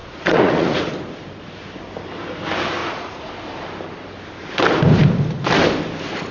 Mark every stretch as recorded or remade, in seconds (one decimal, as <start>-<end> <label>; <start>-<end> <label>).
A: 0.0-0.9 remade; 0.9-2.8 recorded; 2.8-3.3 remade; 3.3-6.3 recorded